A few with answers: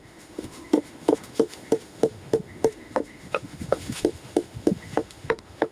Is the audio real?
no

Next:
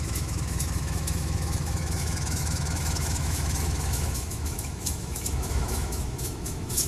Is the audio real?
no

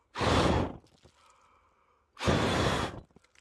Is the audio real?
yes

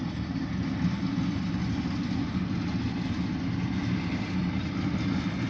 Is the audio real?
yes